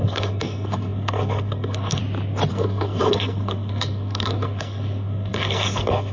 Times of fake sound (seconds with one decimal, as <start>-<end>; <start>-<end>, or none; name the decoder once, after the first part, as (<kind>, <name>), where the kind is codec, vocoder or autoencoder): 0.0-2.0 (codec, SNAC); 2.5-6.1